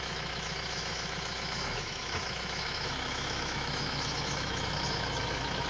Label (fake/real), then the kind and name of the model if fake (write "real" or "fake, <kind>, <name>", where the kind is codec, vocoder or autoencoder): fake, autoencoder, DAC-VAE